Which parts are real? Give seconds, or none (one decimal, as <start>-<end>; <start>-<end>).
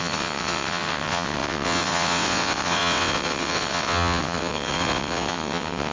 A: none